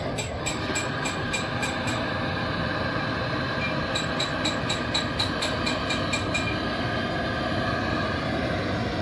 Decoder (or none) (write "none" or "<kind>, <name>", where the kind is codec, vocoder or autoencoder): none